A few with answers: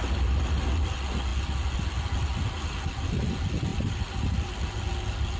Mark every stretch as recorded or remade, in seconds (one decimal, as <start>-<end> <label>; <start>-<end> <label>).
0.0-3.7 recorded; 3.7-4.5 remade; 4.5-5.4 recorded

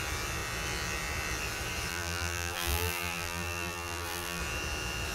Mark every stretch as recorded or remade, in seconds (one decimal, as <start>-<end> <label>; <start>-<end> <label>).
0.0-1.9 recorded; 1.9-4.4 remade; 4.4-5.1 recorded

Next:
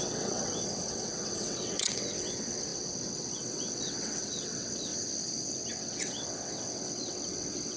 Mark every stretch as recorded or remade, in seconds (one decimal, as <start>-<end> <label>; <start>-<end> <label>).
0.0-4.9 remade; 4.9-5.7 recorded; 5.7-7.8 remade

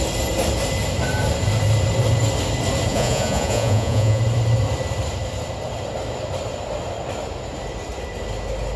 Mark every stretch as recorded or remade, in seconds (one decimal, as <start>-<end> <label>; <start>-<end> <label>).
0.0-2.9 recorded; 2.9-4.2 remade; 4.2-8.8 recorded